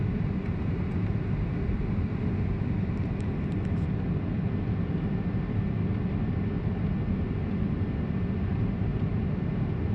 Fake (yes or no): no